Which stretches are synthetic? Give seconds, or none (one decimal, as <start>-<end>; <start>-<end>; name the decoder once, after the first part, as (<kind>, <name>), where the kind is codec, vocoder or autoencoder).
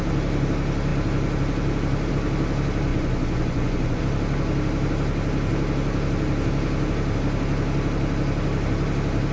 2.9-4.0 (vocoder, Vocos)